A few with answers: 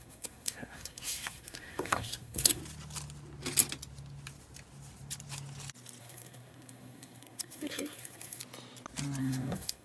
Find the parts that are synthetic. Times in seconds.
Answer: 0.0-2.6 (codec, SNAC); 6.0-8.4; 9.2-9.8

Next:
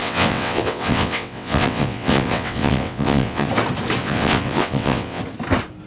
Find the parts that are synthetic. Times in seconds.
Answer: 0.0-3.5 (vocoder, WaveNeXt); 4.0-5.2

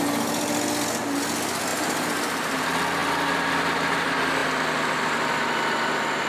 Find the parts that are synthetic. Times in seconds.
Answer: 1.7-2.6 (vocoder, BigVGAN v2)

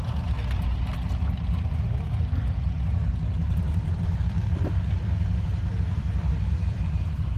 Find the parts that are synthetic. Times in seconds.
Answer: 3.4-7.4 (vocoder, BigVGAN v2)

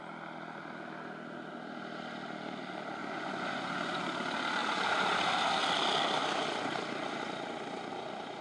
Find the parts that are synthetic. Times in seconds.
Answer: 3.0-4.0 (vocoder, Vocos)